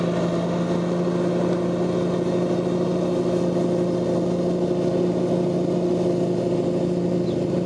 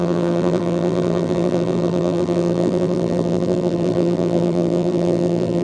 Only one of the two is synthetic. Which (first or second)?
second